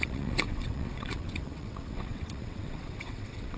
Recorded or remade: remade